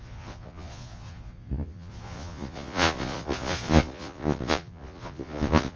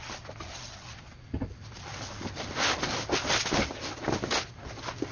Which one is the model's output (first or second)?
first